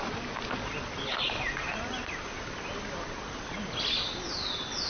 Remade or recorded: recorded